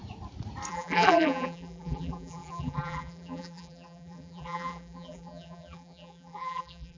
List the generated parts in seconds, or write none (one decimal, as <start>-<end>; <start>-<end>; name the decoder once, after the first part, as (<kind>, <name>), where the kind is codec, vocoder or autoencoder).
0.7-7.0 (vocoder, BigVGAN v2)